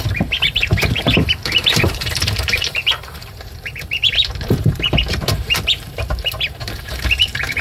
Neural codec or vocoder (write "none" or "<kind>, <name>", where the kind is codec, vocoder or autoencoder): vocoder, BigVGAN v2